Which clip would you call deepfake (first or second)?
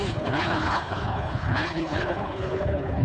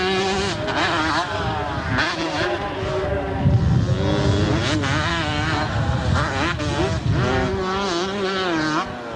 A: first